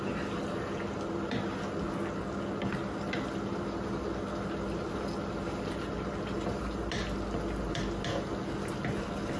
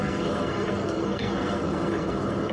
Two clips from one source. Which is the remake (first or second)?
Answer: second